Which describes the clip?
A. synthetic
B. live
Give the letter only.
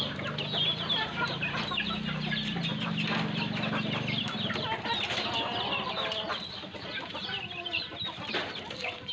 B